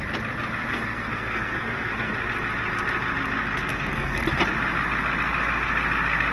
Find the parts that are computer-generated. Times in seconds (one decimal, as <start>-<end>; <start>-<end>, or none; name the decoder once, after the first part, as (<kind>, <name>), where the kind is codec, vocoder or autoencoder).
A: 0.7-2.1 (codec, SNAC); 3.7-4.2